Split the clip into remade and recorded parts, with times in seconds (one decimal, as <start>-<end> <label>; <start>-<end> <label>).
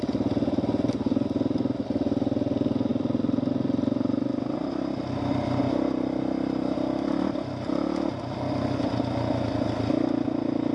0.0-10.7 recorded